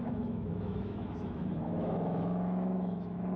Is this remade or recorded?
remade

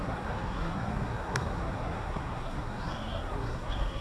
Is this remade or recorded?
remade